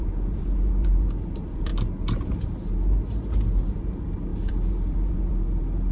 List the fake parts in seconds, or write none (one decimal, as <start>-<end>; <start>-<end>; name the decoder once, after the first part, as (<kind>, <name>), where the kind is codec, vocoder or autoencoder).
0.0-1.7 (vocoder, BigVGAN v2); 3.6-5.9